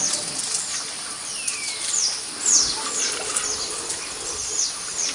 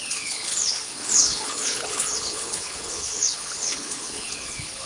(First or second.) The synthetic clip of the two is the second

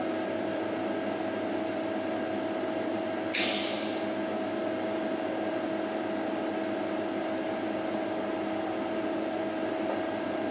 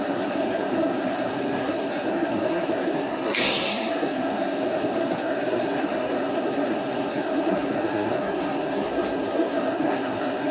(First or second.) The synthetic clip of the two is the second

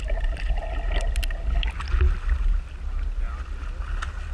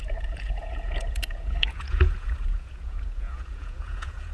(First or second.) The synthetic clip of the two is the second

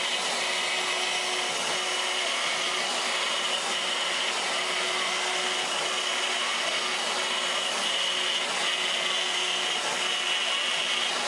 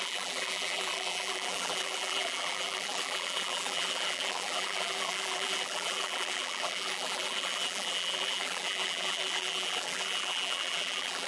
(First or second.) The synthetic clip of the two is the second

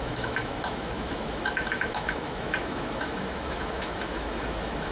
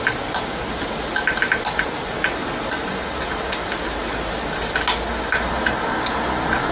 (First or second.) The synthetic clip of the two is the first